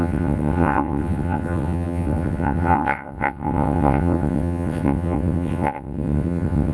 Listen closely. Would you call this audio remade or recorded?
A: remade